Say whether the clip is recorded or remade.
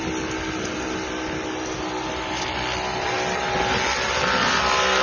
recorded